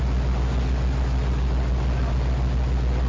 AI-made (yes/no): no